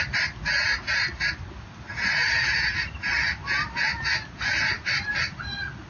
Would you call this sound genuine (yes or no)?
yes